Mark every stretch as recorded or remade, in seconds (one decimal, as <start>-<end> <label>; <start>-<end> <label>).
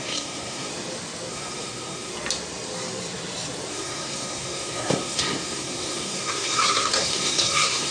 0.0-0.7 remade; 0.7-1.3 recorded; 1.3-2.1 remade; 2.1-3.7 recorded; 3.7-7.9 remade